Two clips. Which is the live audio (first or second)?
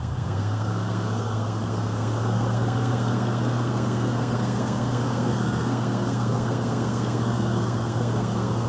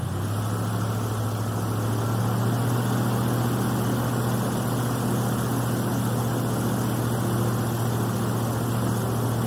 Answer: second